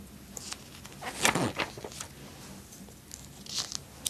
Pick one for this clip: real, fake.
real